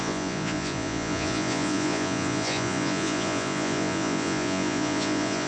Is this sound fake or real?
fake